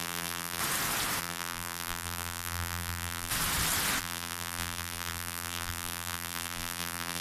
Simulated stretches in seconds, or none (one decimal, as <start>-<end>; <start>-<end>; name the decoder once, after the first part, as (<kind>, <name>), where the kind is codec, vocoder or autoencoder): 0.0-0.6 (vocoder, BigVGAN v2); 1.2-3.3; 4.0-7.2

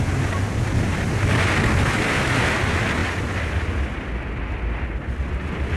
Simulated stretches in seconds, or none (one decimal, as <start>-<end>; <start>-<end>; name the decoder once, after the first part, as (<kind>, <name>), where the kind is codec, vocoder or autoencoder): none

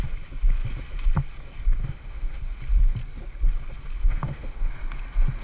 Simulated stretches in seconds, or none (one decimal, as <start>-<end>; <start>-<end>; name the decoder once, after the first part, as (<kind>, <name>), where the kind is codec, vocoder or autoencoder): 1.8-2.4 (autoencoder, DAC-VAE); 4.0-4.7

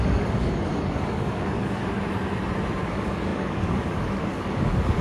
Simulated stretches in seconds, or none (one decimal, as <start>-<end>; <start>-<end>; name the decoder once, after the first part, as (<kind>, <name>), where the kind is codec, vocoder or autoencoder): 0.0-1.8 (codec, DAC); 2.8-5.0

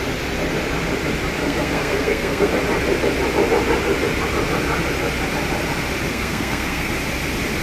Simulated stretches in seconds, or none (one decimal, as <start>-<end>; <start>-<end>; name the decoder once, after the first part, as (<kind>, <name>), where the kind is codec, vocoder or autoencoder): 1.4-2.5 (codec, SNAC); 6.1-6.9

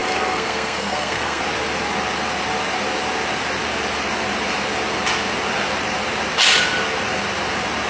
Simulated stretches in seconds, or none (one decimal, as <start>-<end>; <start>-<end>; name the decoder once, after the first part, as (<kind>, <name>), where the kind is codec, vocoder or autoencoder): 0.0-1.4 (codec, SNAC)

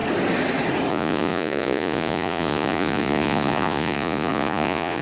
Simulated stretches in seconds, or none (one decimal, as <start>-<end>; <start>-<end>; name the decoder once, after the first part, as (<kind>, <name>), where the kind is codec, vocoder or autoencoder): 0.9-5.0 (vocoder, Vocos)